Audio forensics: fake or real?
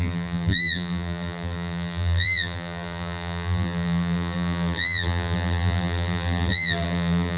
fake